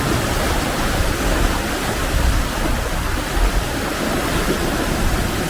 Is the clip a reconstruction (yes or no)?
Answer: no